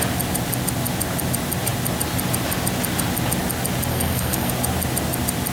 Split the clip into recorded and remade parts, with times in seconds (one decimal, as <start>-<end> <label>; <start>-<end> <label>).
0.0-3.9 recorded; 3.9-4.5 remade; 4.5-5.5 recorded